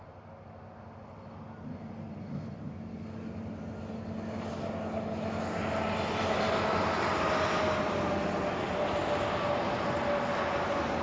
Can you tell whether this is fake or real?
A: real